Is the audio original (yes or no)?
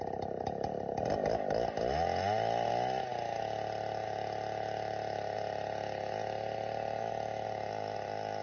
yes